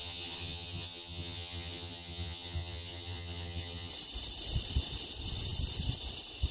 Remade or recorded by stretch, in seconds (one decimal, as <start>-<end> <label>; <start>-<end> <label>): 0.0-3.9 remade; 3.9-6.5 recorded